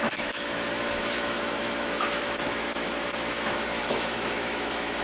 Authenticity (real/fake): fake